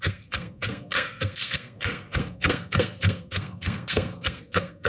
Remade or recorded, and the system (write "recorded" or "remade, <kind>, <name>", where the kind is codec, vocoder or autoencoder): remade, codec, SNAC